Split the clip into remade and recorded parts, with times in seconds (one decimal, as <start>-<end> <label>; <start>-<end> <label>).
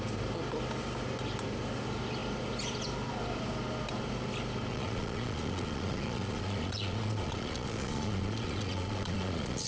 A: 0.0-4.7 recorded; 4.7-9.7 remade